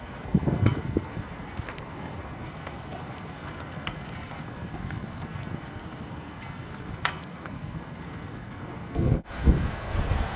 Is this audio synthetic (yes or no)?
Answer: yes